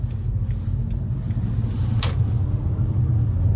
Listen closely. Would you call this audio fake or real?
real